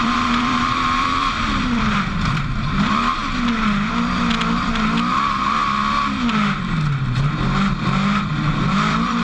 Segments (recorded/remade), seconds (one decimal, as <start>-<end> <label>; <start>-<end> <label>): 0.0-3.2 remade; 3.2-8.2 recorded; 8.2-9.2 remade